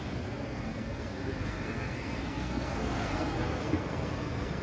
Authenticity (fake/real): fake